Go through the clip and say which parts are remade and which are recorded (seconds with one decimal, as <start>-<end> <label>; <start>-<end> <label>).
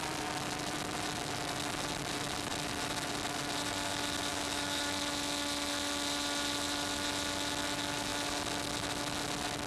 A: 0.0-4.3 recorded; 4.3-4.8 remade; 4.8-9.7 recorded